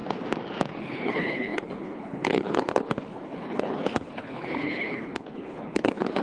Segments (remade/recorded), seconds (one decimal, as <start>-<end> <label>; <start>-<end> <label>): 0.0-0.8 recorded; 0.8-6.2 remade